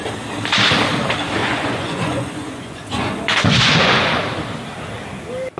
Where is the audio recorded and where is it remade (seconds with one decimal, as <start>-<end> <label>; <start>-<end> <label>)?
0.0-1.4 recorded; 1.4-4.2 remade; 4.2-5.6 recorded

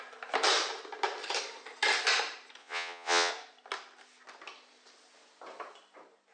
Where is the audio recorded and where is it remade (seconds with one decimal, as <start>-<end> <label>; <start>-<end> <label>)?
0.0-2.6 recorded; 2.6-3.3 remade; 3.3-6.3 recorded